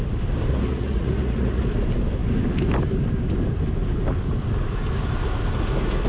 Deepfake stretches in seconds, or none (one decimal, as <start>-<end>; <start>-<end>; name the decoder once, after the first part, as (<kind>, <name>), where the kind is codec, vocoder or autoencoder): 0.5-1.7 (vocoder, Vocos)

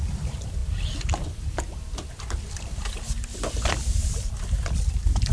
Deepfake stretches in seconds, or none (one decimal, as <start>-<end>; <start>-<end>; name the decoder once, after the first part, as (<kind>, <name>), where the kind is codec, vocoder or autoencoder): none

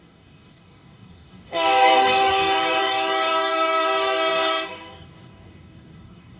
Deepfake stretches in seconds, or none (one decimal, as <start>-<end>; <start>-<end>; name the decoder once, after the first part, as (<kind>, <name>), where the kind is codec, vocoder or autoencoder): 0.0-6.4 (codec, DAC)

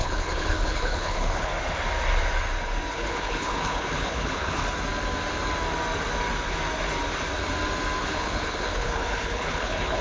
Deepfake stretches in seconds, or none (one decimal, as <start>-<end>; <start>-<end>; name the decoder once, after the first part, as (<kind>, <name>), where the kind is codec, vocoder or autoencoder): 0.0-1.5 (codec, HILCodec); 2.9-4.6; 8.0-10.0

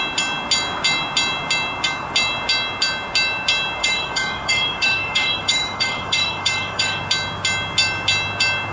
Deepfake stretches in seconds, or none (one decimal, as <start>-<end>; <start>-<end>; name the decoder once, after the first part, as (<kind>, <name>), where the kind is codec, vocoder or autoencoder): 3.8-7.0 (autoencoder, DAC-VAE)